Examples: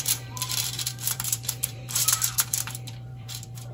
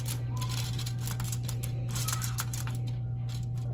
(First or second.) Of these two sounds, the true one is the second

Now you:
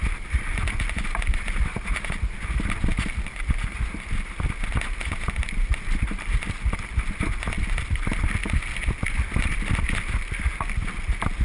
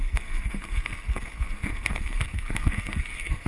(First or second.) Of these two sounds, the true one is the first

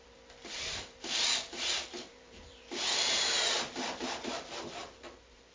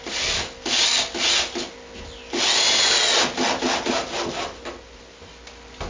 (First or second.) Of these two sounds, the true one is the second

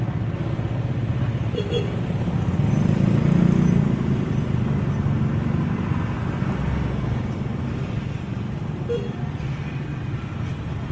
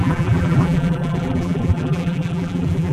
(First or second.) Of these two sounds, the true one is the first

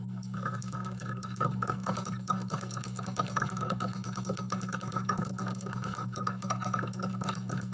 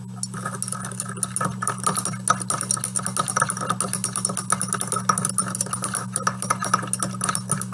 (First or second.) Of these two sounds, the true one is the second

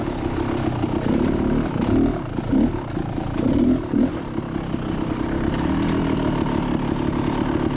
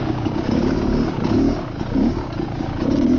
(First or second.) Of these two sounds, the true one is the first